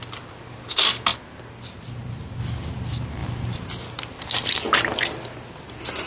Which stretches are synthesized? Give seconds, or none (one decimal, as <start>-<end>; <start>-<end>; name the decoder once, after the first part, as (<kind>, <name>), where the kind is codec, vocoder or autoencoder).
none